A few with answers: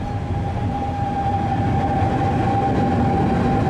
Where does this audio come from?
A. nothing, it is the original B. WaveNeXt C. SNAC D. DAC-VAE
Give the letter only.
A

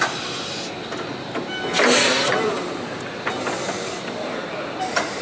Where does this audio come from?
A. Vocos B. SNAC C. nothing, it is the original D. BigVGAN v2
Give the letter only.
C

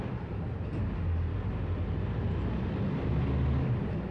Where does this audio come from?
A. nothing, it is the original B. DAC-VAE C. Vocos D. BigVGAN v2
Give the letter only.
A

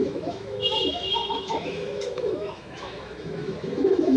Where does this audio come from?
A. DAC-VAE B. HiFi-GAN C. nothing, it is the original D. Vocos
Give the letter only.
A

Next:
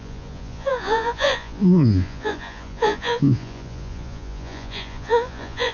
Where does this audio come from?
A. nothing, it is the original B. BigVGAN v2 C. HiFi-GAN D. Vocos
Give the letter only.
D